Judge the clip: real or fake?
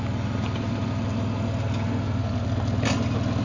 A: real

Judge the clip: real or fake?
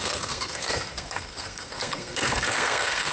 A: fake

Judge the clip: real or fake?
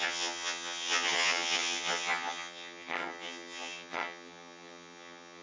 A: fake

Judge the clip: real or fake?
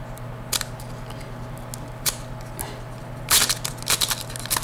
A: real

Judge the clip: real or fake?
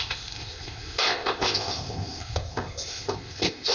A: fake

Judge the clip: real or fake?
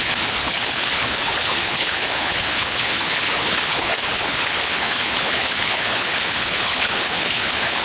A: fake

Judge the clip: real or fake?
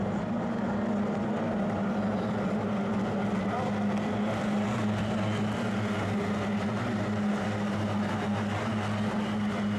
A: real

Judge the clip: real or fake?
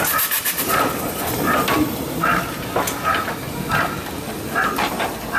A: real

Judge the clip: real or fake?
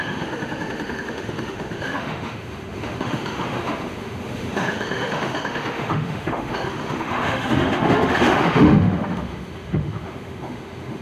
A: fake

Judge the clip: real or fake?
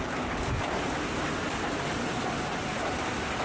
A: real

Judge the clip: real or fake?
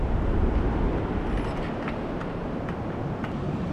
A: real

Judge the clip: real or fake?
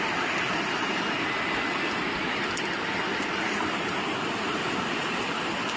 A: real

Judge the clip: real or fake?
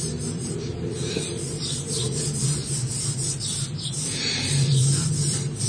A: fake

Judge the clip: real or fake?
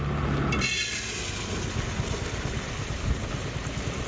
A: real